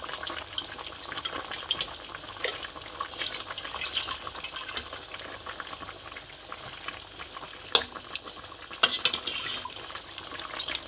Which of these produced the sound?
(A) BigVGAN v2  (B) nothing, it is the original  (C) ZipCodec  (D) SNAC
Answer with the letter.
B